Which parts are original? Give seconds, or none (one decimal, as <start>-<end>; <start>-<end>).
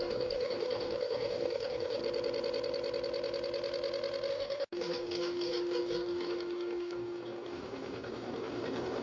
2.0-4.3